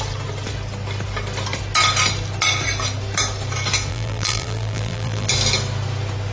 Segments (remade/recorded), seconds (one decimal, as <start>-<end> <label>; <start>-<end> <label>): 0.0-3.9 recorded; 3.9-5.3 remade; 5.3-6.3 recorded